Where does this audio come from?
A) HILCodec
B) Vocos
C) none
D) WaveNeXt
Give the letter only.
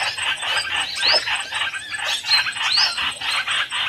C